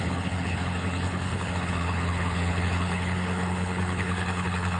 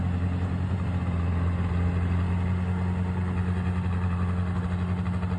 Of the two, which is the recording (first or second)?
second